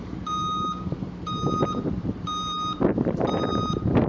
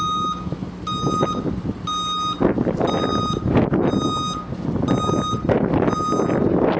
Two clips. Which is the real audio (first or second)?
second